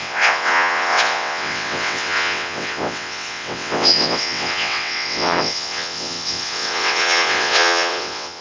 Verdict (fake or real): fake